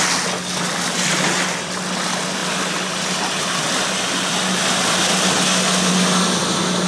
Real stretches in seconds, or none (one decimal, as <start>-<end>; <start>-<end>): 0.0-6.9